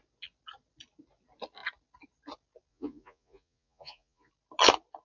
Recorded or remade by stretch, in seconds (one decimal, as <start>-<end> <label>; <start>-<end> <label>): 0.0-2.7 recorded; 2.7-4.3 remade; 4.3-5.0 recorded

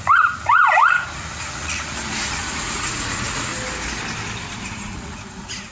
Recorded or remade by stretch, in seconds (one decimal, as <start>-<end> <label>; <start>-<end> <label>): 0.0-3.5 remade; 3.5-4.7 recorded; 4.7-5.7 remade

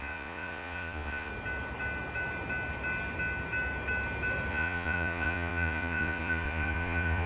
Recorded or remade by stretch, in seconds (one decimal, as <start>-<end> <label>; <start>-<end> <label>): 0.0-1.3 remade; 1.3-4.5 recorded; 4.5-7.3 remade

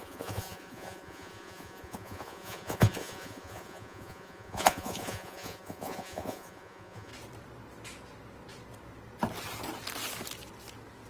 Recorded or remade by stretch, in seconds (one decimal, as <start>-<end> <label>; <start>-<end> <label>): 0.0-7.1 remade; 7.1-11.1 recorded

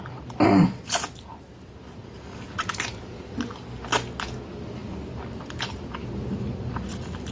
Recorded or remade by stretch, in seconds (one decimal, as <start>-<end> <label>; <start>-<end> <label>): 0.0-7.3 recorded

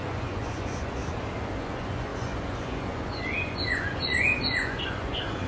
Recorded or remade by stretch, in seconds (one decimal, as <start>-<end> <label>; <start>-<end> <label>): 0.0-1.0 remade; 1.0-1.6 recorded; 1.6-5.5 remade

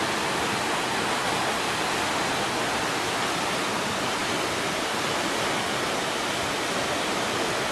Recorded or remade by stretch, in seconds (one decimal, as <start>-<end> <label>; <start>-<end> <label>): 0.0-7.7 recorded

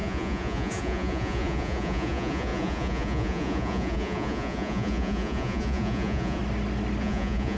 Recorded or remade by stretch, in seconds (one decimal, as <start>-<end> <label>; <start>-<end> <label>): 0.0-6.4 remade; 6.4-7.0 recorded; 7.0-7.6 remade